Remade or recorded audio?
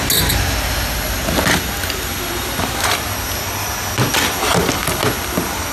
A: recorded